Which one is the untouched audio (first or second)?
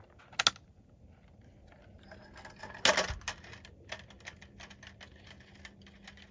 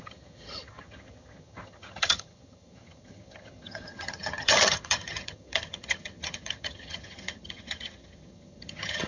first